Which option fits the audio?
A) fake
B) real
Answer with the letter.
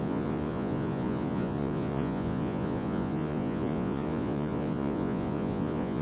A